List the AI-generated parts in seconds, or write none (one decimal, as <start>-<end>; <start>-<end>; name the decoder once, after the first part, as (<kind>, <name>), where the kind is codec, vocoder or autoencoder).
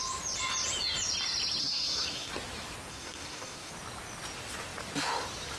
1.6-2.3 (codec, SNAC); 2.9-3.7